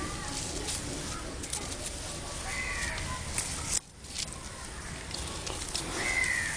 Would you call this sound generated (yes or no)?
no